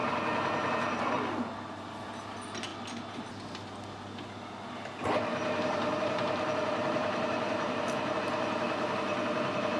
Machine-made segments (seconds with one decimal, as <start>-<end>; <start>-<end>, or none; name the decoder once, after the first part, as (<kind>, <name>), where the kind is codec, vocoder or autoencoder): 5.3-8.2 (vocoder, BigVGAN v2)